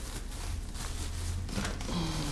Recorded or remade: recorded